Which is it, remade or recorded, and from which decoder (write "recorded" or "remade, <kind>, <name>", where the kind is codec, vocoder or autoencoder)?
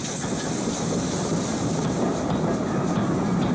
recorded